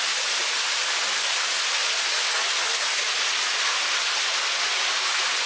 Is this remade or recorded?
recorded